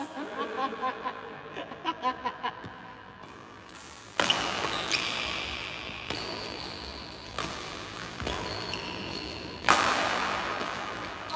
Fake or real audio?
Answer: fake